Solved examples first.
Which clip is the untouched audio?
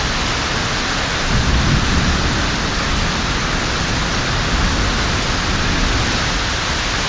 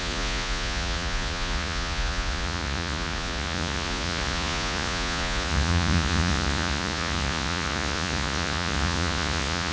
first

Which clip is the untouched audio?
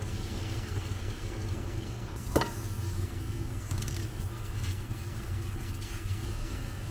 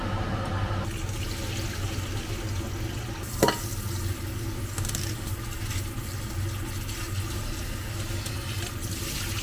second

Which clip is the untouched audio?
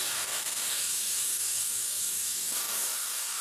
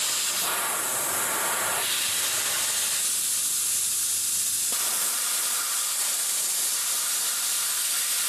second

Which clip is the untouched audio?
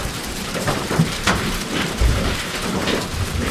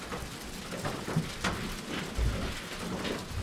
second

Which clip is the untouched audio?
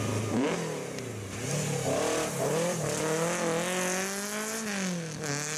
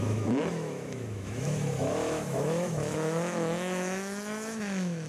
first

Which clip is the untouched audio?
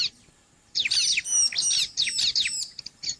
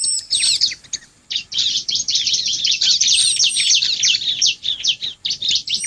first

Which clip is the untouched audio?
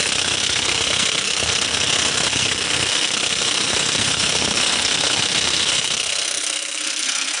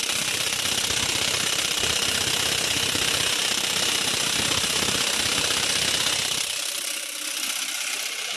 second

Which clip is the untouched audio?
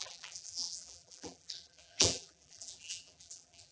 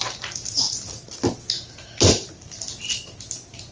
second